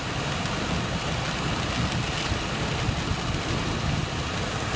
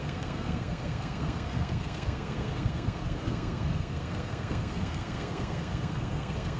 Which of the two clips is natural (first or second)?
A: first